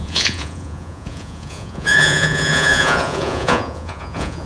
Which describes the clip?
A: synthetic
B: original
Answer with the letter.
A